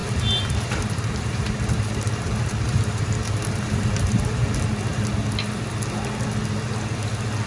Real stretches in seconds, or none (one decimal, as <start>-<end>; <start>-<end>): 4.5-7.5